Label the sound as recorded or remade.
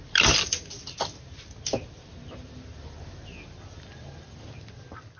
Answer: recorded